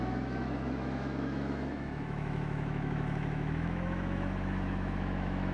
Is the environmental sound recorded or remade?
remade